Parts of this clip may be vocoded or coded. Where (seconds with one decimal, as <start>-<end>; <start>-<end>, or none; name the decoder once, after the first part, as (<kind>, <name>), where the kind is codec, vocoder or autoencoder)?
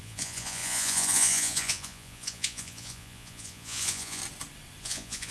0.0-4.2 (vocoder, Vocos); 4.8-5.3